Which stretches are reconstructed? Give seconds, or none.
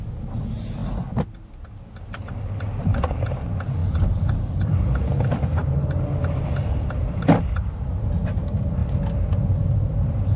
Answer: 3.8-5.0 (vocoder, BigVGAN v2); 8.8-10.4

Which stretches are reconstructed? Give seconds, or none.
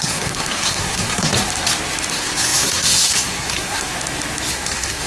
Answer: 0.0-1.3 (codec, SNAC); 2.1-3.9; 4.5-5.1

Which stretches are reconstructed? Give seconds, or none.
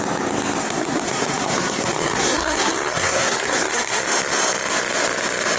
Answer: 0.6-4.0 (codec, SNAC)